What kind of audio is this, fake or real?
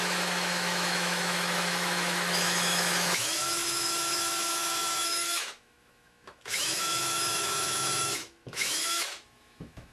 fake